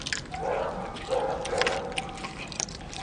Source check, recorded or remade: recorded